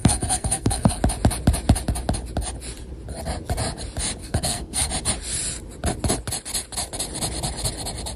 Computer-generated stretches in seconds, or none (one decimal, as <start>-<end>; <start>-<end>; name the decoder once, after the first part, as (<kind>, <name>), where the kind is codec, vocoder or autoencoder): 0.0-1.0 (codec, SNAC); 4.2-4.9